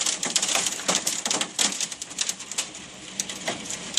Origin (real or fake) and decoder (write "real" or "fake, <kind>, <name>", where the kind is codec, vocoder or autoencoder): fake, vocoder, BigVGAN v2